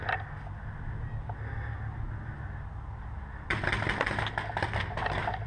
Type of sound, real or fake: real